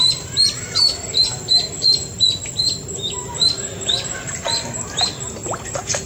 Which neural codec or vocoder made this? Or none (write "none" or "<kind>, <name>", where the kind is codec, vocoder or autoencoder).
none